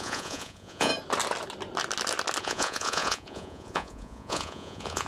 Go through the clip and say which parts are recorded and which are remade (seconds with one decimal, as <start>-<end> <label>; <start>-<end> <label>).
0.0-0.9 remade; 0.9-2.4 recorded; 2.4-5.1 remade